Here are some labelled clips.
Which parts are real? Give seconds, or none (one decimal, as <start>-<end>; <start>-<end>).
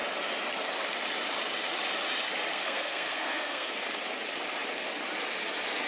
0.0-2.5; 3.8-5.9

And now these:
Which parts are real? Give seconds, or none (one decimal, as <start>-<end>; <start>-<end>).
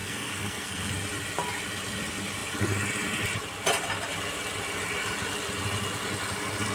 0.9-6.7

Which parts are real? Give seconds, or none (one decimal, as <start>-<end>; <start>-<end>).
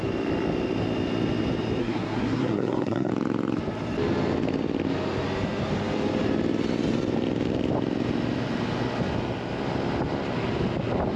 0.0-1.8; 3.1-11.2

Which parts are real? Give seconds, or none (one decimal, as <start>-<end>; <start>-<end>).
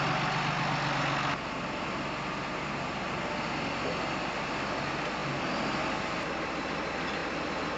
0.0-7.8